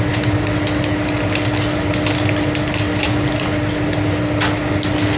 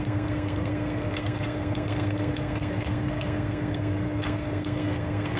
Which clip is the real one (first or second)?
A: first